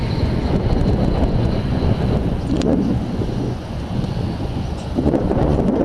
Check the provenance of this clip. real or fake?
fake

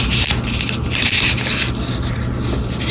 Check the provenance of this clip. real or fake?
real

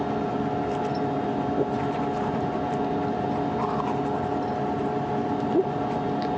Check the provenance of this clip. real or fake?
real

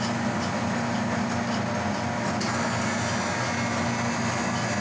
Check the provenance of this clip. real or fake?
real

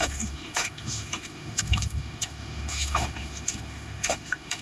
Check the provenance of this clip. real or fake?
fake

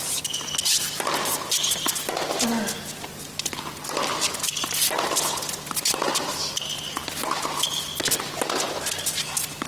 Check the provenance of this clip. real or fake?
real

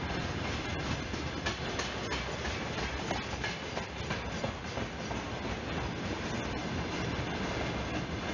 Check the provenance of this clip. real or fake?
real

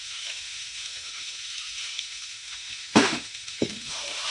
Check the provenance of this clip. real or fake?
fake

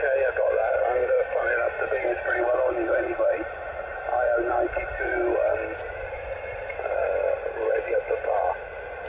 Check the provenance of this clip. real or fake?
real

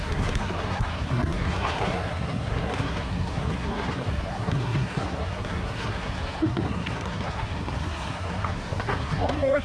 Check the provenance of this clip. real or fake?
fake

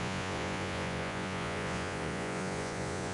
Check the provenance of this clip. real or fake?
fake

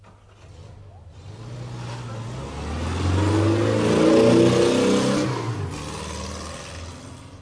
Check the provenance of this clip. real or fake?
real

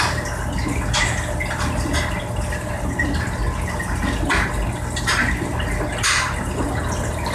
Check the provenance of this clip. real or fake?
real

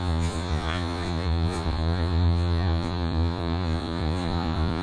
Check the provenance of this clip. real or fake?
fake